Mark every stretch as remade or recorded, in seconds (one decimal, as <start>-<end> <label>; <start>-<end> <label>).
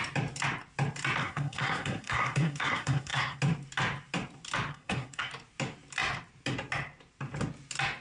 0.0-1.2 recorded; 1.2-3.4 remade; 3.4-4.7 recorded; 4.7-5.3 remade; 5.3-8.0 recorded